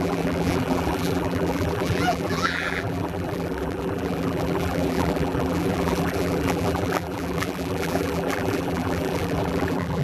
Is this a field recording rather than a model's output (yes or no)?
no